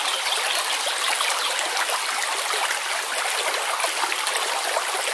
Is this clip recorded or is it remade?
recorded